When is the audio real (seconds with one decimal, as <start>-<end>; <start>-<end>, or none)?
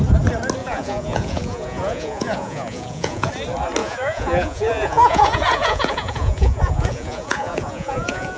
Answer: 0.0-0.6; 3.3-3.8